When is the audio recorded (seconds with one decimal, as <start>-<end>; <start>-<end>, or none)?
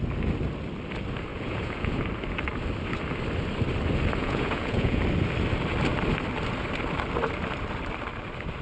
0.0-1.3; 2.0-4.2; 5.0-8.6